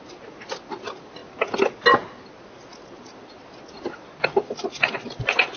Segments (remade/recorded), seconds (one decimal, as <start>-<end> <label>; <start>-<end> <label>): 0.0-5.6 recorded

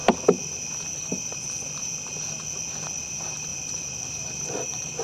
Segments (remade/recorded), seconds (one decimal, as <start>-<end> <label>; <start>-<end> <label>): 0.0-3.5 recorded; 3.5-5.0 remade

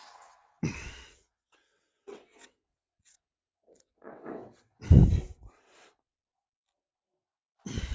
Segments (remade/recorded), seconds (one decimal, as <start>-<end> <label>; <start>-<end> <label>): 0.0-5.0 remade; 5.0-7.9 recorded

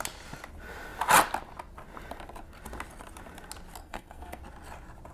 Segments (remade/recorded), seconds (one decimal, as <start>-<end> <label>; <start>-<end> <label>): 0.0-3.8 recorded; 3.8-4.4 remade; 4.4-5.1 recorded

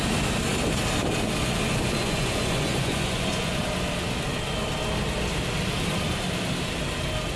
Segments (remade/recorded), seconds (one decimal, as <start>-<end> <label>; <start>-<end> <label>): 0.0-2.0 recorded; 2.0-3.6 remade; 3.6-7.4 recorded